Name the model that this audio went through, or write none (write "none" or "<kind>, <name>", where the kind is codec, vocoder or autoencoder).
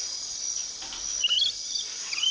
none